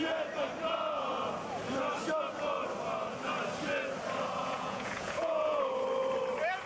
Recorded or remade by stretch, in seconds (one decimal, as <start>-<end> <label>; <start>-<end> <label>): 0.0-4.4 recorded; 4.4-5.6 remade; 5.6-6.7 recorded